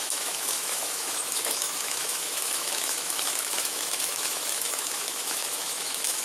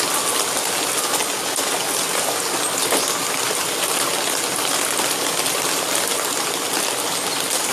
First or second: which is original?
second